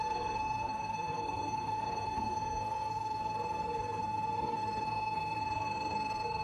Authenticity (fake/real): fake